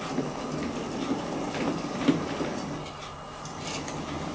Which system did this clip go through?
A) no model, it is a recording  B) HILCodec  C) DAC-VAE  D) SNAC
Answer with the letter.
A